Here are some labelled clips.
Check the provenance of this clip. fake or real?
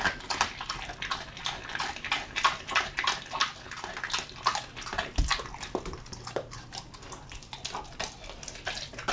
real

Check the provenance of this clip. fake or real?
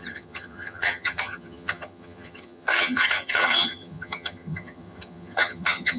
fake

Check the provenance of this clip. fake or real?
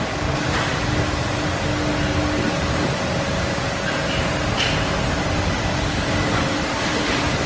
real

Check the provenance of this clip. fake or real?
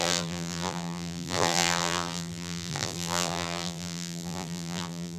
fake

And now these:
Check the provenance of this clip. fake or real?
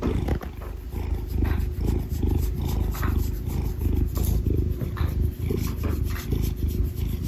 real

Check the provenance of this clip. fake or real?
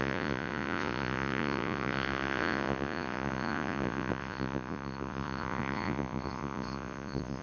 fake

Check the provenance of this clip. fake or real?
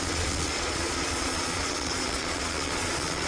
fake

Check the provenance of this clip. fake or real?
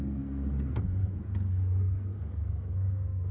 fake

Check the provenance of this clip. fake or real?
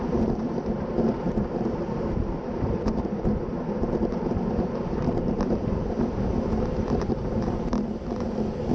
fake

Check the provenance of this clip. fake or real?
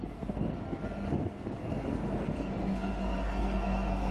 fake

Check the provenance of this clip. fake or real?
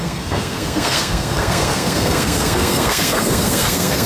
fake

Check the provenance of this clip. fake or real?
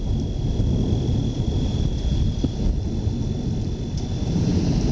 real